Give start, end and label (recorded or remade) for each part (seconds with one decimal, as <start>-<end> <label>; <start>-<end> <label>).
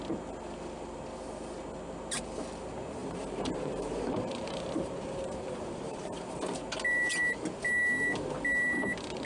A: 0.0-3.0 recorded; 3.0-6.2 remade; 6.2-9.2 recorded